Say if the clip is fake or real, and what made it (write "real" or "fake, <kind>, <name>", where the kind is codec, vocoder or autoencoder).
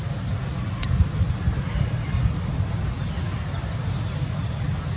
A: real